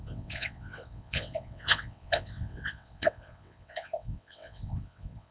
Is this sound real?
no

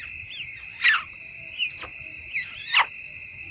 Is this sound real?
yes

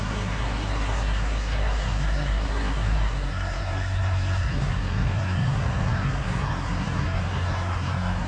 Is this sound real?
no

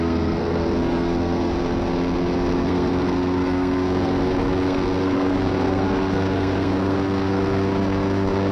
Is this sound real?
no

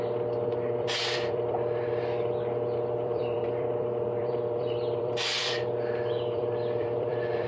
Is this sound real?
no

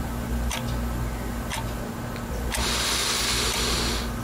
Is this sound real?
yes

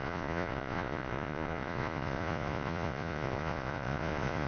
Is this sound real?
no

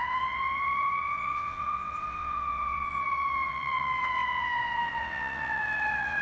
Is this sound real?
no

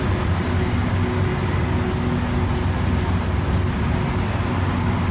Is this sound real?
yes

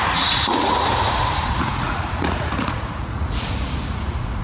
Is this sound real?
no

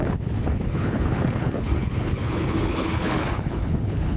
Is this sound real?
no